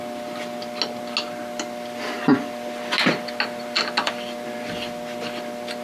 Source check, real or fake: real